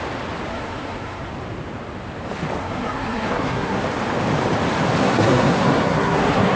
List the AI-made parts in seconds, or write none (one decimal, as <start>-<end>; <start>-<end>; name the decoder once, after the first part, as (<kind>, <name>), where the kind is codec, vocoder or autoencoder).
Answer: 0.5-1.3 (codec, SNAC); 2.6-3.8; 5.0-6.6